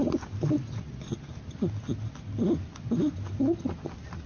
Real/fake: real